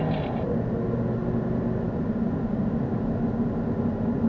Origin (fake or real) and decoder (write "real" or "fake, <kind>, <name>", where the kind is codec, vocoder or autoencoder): real